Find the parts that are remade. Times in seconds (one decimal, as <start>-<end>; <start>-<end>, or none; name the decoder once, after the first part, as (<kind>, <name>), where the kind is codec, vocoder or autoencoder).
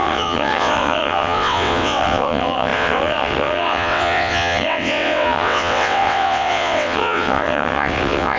0.0-8.4 (vocoder, WaveNeXt)